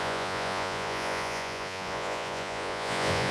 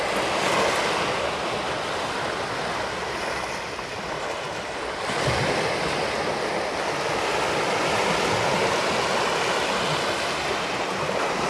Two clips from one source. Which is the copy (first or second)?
first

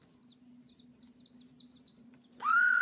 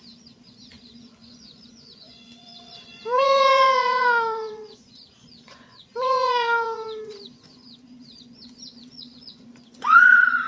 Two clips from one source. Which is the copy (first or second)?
second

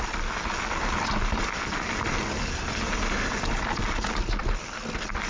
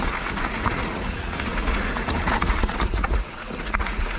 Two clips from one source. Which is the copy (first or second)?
second